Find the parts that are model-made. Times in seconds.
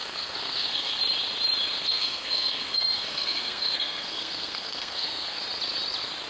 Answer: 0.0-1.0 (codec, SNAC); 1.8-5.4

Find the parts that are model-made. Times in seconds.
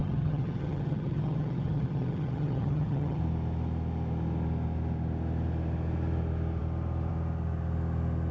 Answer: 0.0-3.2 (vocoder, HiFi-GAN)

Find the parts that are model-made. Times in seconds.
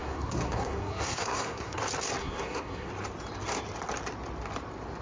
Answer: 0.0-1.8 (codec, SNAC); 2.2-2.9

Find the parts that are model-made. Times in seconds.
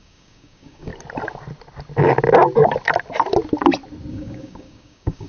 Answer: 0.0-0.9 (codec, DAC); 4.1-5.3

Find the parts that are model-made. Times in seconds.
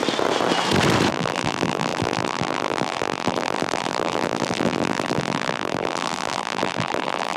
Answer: 1.1-7.4 (vocoder, BigVGAN v2)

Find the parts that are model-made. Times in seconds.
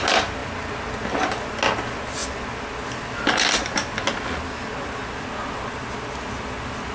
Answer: none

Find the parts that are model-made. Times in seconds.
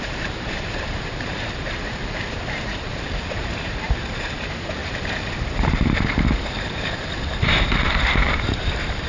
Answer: 0.0-9.1 (vocoder, BigVGAN v2)